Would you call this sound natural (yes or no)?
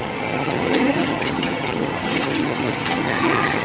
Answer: no